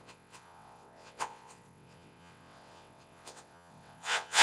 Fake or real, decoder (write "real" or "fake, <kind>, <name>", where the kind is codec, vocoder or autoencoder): fake, vocoder, WaveNeXt